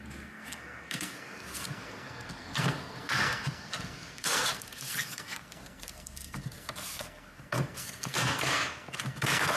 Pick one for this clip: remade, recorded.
remade